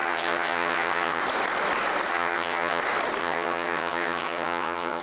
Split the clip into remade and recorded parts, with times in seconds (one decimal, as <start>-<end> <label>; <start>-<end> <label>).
0.0-1.2 remade; 1.2-2.1 recorded; 2.1-2.8 remade; 2.8-3.2 recorded; 3.2-5.0 remade